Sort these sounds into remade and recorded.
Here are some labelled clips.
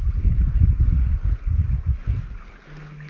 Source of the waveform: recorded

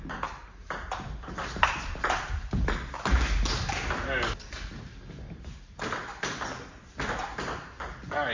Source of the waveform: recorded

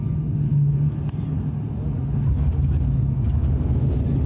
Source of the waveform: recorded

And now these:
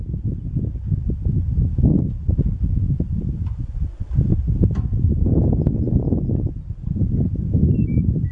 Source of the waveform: recorded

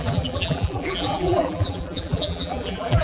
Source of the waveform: remade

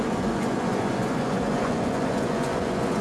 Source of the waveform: remade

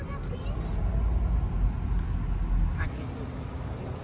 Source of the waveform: recorded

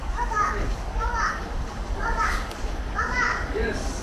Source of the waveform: remade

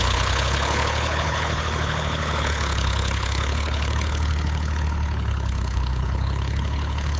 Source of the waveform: remade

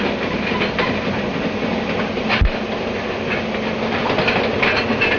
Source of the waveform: recorded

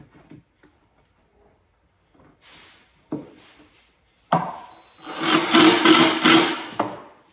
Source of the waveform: recorded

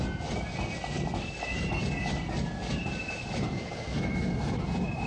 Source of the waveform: recorded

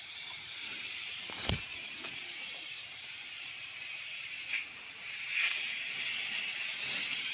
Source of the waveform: remade